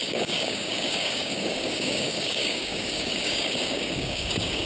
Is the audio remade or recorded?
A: remade